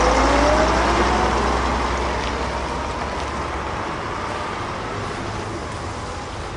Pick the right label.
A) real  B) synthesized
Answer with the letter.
A